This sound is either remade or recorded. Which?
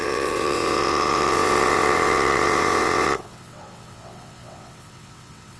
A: remade